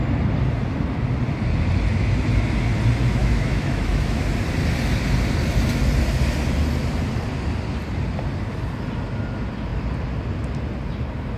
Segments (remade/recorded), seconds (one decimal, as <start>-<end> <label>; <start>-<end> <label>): 0.0-3.2 recorded; 3.2-4.2 remade; 4.2-11.4 recorded